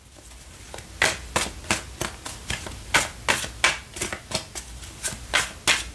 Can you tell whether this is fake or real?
real